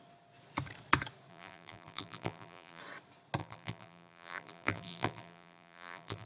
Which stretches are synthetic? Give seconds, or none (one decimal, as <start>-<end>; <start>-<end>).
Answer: 1.3-2.8; 3.4-6.3